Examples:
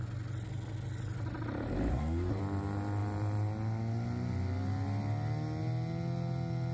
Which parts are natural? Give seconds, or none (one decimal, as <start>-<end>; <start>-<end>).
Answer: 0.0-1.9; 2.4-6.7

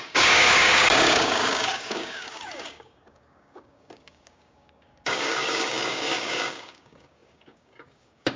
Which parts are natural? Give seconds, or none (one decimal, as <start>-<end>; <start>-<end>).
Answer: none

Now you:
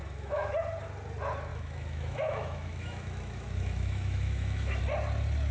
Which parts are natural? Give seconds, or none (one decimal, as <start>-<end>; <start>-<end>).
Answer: 0.5-1.5; 4.8-5.5

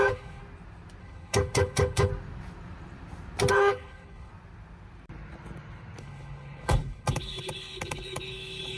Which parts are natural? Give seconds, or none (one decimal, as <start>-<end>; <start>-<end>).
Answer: 0.4-1.0; 2.1-3.5; 4.3-6.0

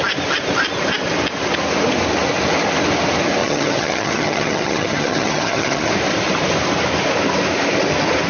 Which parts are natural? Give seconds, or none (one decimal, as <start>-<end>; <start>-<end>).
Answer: 0.0-3.4; 5.9-8.3